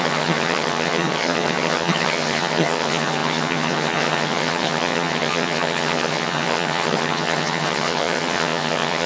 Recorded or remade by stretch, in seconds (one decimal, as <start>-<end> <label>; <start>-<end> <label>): 0.0-9.1 remade